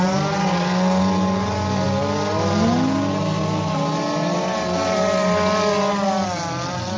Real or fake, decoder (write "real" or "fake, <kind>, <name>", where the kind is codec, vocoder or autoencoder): real